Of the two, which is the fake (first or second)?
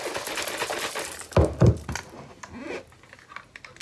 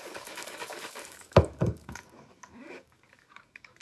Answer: second